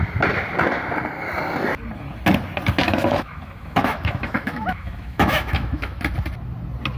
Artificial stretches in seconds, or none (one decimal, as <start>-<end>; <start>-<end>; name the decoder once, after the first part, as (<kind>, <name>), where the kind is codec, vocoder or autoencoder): 2.8-6.0 (autoencoder, DAC-VAE)